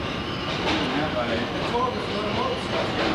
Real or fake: real